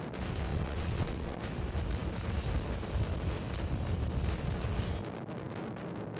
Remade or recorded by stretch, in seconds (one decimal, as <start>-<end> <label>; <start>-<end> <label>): 0.0-0.5 recorded; 0.5-1.4 remade; 1.4-6.2 recorded